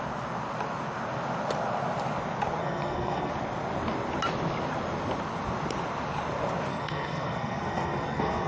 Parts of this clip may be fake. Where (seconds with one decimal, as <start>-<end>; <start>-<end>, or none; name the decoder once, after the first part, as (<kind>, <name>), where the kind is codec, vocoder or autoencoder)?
2.6-3.3 (codec, SNAC); 6.7-8.5